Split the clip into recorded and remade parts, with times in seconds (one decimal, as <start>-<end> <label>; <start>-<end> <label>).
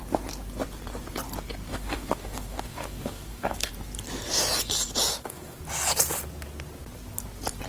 0.0-1.7 recorded; 1.7-3.7 remade; 3.7-5.1 recorded; 5.1-5.6 remade; 5.6-7.7 recorded